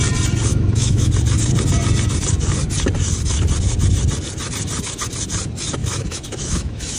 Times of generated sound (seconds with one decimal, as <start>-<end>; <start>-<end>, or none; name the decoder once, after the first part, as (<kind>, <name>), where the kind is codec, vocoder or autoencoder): 0.5-1.1 (autoencoder, DAC-VAE); 5.8-7.0